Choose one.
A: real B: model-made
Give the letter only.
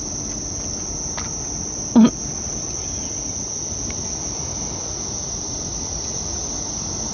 A